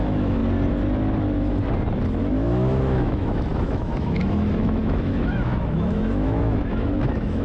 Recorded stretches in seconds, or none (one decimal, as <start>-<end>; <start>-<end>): 0.4-2.2